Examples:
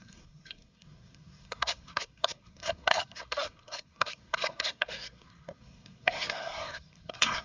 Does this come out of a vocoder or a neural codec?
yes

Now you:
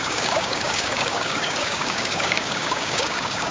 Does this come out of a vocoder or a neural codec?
yes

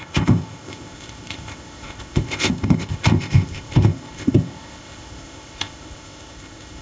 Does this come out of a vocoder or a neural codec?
yes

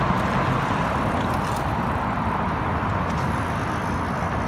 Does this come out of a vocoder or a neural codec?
no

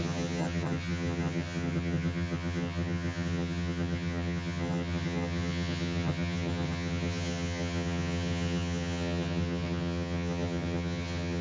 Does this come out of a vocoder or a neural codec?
yes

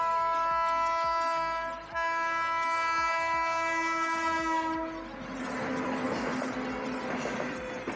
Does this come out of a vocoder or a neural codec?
no